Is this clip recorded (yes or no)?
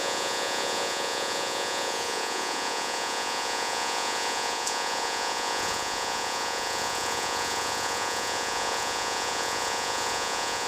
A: no